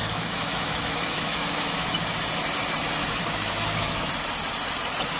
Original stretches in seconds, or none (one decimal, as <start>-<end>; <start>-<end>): 2.2-3.0; 4.1-5.2